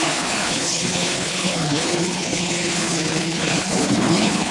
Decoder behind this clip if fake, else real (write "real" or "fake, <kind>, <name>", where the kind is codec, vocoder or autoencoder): fake, codec, HILCodec